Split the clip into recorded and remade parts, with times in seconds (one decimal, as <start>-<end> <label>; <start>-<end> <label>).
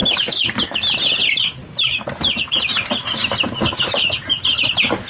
0.0-5.1 recorded